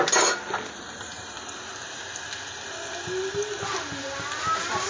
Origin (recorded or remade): recorded